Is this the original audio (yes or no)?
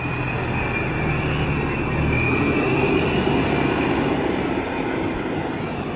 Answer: yes